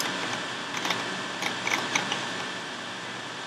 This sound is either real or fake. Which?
real